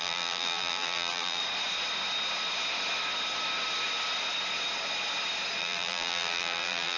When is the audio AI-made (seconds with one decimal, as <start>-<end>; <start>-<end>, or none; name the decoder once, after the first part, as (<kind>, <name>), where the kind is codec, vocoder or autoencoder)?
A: 0.0-1.4 (vocoder, BigVGAN v2); 5.6-7.0